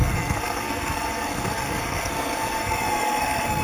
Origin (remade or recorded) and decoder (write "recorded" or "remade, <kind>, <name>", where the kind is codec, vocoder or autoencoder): remade, codec, SNAC